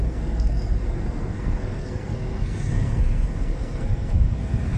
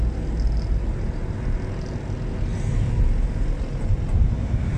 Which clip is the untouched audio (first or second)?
second